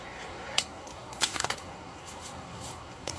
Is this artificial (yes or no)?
yes